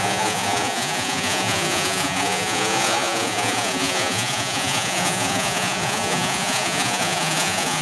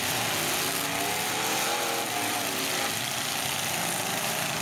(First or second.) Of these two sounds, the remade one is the first